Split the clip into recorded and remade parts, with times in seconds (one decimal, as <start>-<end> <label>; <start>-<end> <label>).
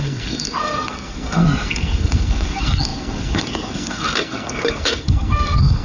0.0-5.8 remade